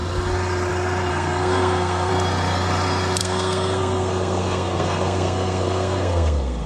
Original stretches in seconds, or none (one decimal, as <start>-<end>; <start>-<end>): 0.0-1.1; 2.1-3.2